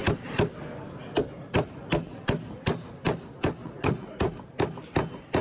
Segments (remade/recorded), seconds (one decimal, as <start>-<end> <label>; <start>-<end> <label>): 0.0-3.6 recorded; 3.6-4.2 remade; 4.2-5.4 recorded